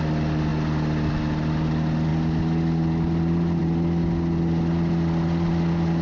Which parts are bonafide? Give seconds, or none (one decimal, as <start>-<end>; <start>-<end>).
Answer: 0.0-6.0